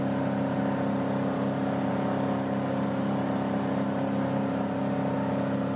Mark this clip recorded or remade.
recorded